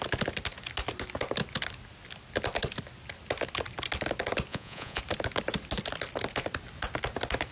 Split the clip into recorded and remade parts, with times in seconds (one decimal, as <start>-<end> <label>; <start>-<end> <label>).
0.0-4.5 recorded; 4.5-5.0 remade; 5.0-7.5 recorded